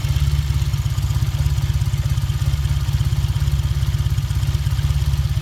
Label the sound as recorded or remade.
recorded